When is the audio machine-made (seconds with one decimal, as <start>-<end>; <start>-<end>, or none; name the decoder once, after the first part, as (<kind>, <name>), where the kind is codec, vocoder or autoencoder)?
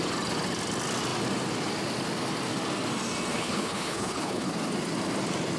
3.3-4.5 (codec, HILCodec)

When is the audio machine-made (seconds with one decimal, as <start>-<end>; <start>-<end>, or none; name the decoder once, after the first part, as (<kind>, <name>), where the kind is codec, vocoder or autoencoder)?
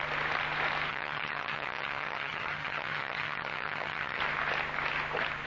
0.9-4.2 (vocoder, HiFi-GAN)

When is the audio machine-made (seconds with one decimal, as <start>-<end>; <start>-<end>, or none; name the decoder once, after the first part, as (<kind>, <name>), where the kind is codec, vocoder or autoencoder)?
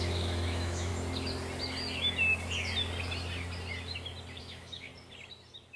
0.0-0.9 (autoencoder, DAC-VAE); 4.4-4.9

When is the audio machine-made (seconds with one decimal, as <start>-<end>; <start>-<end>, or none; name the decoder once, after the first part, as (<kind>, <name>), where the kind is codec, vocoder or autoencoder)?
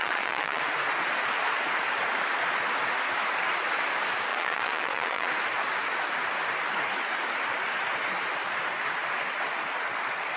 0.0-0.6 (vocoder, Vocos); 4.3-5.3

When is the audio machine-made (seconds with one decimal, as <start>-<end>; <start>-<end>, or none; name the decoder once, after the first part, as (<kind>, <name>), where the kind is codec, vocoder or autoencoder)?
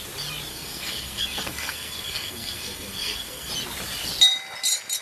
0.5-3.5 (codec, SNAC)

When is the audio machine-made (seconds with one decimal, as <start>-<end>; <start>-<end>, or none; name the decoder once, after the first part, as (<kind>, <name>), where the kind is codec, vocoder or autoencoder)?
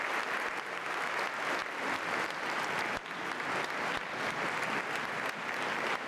none